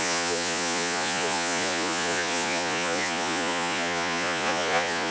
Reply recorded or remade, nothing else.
remade